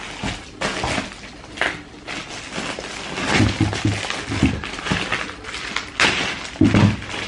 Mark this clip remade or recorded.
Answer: recorded